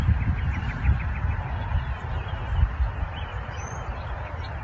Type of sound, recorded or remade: recorded